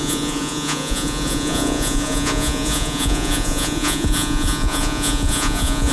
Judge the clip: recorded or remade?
remade